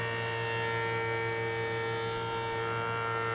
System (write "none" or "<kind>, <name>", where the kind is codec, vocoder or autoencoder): none